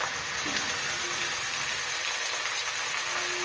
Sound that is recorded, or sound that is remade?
recorded